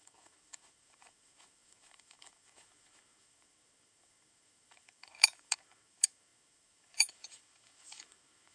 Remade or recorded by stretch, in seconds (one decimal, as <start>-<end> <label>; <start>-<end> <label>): 0.0-8.5 remade